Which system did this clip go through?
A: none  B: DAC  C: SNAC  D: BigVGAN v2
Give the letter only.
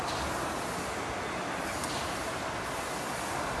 D